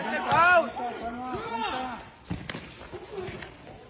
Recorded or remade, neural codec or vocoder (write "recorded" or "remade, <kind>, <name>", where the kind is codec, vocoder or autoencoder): recorded